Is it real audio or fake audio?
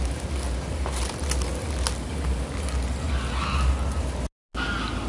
real